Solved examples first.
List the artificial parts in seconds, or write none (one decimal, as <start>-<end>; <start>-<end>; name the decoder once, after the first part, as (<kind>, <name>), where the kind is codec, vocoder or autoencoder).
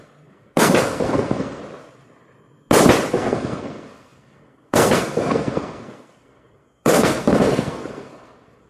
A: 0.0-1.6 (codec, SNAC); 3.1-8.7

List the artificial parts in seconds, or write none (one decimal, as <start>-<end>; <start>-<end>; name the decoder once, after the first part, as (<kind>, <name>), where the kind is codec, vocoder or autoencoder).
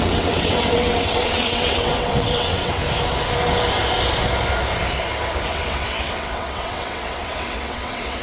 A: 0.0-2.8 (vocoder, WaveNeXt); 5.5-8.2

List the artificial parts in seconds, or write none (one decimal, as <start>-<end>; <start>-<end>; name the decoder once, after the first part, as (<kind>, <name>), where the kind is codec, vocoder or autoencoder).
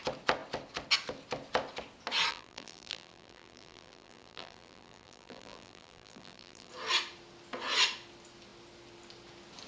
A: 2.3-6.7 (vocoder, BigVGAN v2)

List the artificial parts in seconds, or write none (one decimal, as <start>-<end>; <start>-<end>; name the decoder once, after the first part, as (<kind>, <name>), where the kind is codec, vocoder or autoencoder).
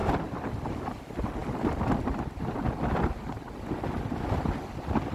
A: none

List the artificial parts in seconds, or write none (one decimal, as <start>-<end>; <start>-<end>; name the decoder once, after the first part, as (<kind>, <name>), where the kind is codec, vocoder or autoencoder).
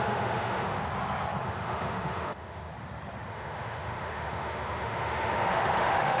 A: 0.0-0.8 (autoencoder, DAC-VAE); 1.4-2.7; 3.3-6.2